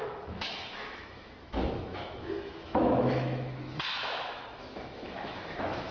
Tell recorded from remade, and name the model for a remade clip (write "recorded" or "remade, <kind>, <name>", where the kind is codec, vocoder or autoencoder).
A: remade, autoencoder, DAC-VAE